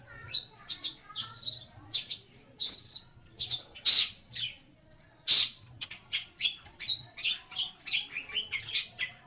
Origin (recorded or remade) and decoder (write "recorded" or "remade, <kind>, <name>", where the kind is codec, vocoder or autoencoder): remade, vocoder, Vocos